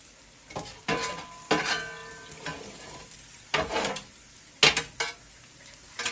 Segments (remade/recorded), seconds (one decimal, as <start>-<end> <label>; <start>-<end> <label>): 0.0-6.1 recorded